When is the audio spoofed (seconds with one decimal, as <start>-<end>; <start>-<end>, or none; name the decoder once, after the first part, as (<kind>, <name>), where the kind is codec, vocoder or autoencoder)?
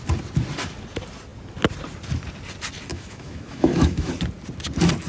2.9-4.1 (autoencoder, DAC-VAE)